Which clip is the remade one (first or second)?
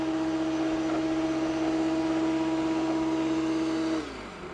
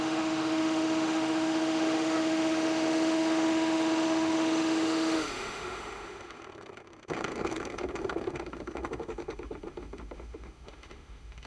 second